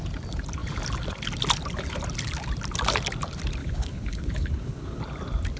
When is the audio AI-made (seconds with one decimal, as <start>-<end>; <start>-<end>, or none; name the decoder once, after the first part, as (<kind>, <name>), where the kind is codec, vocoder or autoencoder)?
3.6-5.0 (codec, HILCodec)